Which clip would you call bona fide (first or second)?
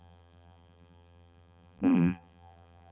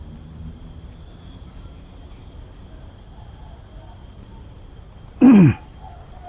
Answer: second